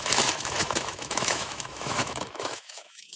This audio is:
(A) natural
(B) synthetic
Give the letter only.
B